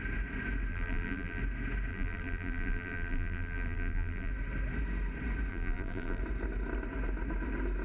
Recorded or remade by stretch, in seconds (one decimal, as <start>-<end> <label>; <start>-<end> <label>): 0.0-0.7 recorded; 0.7-1.4 remade; 1.4-1.9 recorded; 1.9-4.3 remade; 4.3-5.5 recorded; 5.5-6.2 remade; 6.2-7.8 recorded